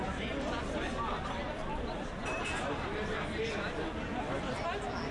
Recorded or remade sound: recorded